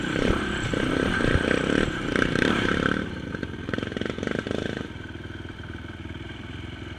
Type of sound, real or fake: fake